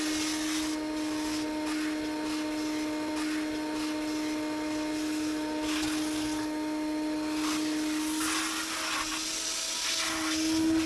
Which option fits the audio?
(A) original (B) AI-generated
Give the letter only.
A